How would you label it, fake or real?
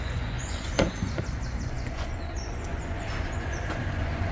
fake